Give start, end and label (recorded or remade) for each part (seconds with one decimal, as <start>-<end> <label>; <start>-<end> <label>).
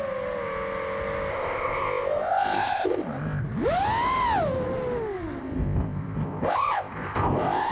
0.0-1.3 recorded; 1.3-3.4 remade; 3.4-5.4 recorded; 5.4-7.7 remade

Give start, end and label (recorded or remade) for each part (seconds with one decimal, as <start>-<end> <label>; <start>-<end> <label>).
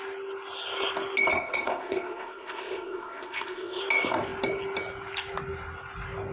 0.0-1.3 recorded; 1.3-3.8 remade; 3.8-6.3 recorded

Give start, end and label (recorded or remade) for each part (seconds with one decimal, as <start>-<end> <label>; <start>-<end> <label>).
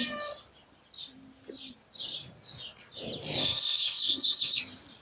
0.0-3.4 recorded; 3.4-4.6 remade; 4.6-5.0 recorded